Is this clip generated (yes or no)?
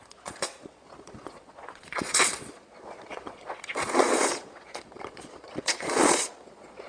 yes